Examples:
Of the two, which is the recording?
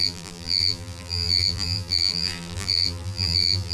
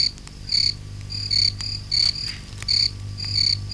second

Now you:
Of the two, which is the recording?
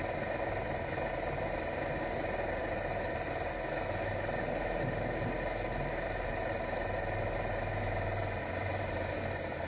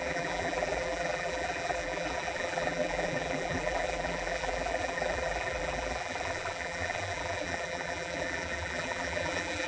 first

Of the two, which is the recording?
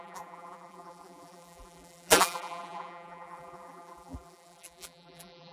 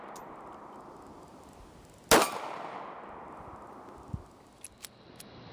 second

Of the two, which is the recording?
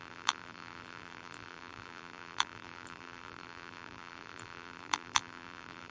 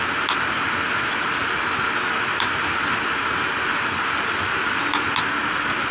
second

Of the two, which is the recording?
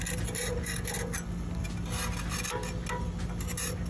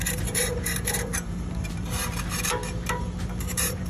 first